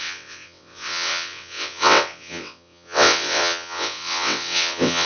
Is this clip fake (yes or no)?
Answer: yes